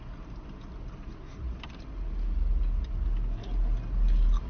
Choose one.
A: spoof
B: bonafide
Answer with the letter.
B